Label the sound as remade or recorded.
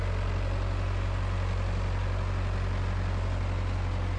recorded